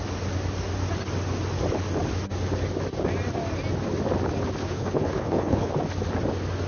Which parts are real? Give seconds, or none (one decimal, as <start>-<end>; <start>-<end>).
0.0-4.6; 5.7-6.7